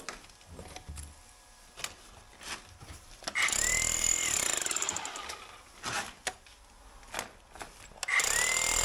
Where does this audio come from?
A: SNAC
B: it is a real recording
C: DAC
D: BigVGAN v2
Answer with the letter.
B